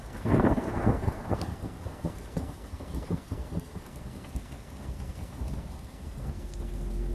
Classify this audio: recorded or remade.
remade